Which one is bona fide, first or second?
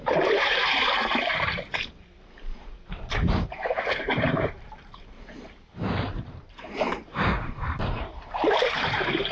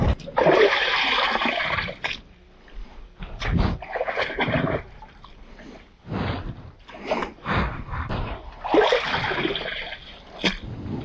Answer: second